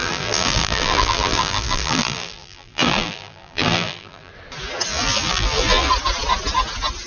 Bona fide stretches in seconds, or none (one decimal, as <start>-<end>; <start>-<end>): 4.3-4.9; 5.9-7.1